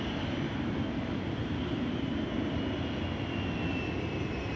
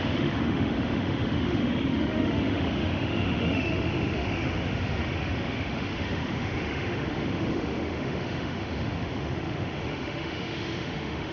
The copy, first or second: second